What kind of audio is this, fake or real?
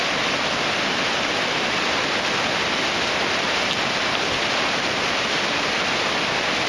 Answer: real